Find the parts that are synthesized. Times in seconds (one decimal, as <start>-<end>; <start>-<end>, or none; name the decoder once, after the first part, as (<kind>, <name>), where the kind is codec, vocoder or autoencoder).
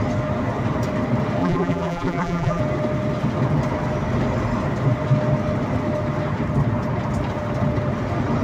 1.4-2.6 (vocoder, BigVGAN v2)